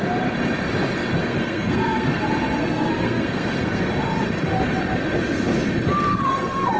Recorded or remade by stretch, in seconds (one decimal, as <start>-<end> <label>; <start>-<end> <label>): 0.0-1.2 recorded; 1.2-2.2 remade; 2.2-2.6 recorded; 2.6-3.9 remade; 3.9-6.1 recorded; 6.1-6.8 remade